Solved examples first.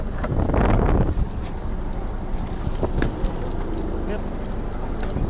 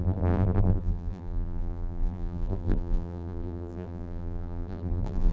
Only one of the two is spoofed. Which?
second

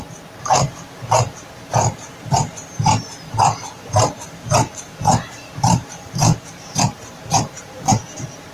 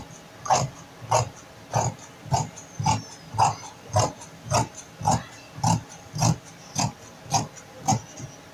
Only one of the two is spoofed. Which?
first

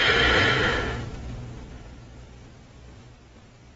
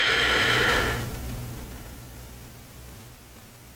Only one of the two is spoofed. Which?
first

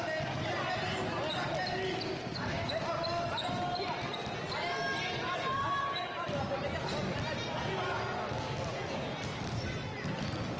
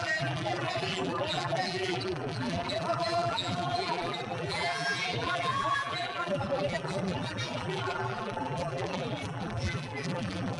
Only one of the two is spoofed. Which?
second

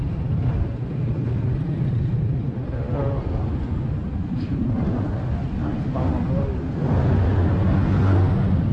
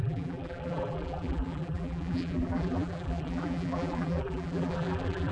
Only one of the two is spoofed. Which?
second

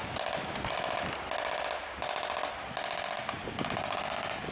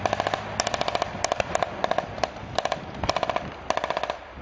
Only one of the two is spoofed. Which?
second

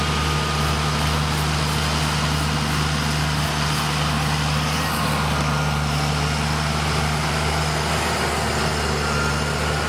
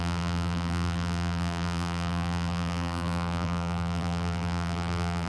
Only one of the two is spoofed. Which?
second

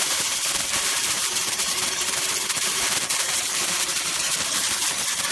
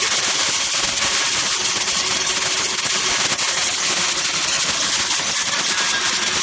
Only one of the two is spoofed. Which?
first